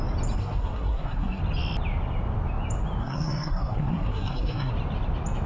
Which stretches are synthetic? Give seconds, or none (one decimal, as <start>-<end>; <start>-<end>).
0.4-1.4; 3.0-4.7